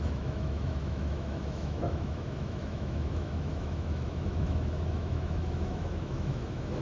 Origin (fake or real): fake